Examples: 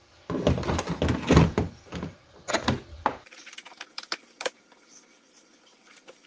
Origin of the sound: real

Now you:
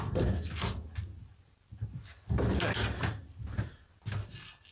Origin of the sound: real